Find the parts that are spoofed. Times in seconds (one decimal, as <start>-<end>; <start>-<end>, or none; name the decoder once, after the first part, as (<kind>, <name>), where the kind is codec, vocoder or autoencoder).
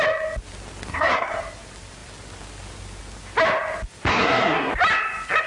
0.9-1.4 (codec, SNAC); 4.1-4.7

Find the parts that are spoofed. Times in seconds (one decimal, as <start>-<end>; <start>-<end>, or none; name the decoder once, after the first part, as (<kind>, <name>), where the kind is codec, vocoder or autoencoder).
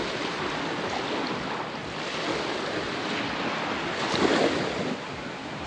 none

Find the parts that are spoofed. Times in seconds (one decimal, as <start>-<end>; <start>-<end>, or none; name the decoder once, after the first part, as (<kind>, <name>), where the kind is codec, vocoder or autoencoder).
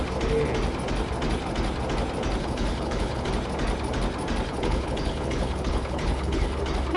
2.4-3.3 (codec, HILCodec); 4.5-6.6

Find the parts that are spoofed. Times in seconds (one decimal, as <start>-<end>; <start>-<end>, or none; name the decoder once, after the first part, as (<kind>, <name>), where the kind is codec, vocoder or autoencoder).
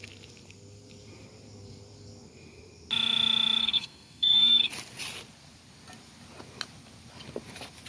3.6-4.7 (codec, SNAC)